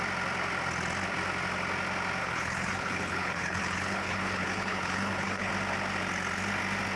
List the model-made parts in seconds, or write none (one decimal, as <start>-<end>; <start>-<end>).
2.2-5.5